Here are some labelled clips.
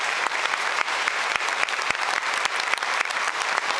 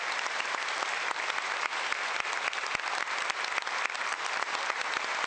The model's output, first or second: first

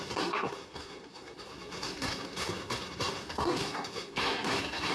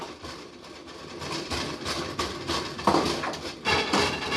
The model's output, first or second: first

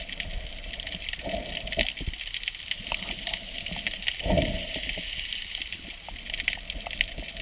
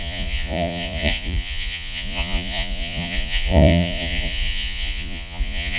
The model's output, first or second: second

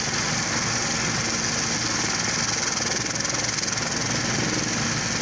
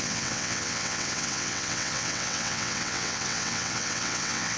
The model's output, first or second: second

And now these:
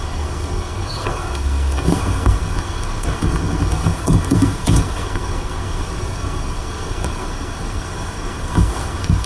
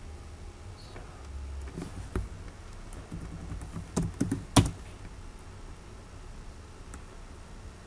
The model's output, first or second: first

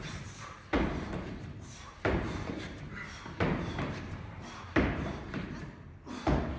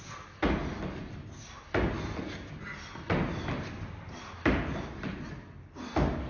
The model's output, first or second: first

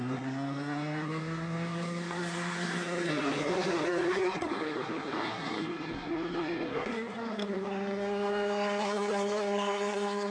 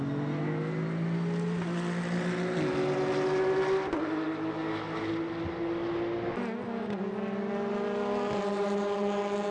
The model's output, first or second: first